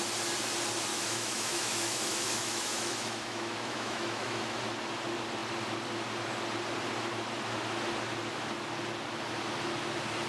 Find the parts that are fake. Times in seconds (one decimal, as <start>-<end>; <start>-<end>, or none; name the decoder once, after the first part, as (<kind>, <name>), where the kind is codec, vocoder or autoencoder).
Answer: 0.9-4.6 (autoencoder, DAC-VAE)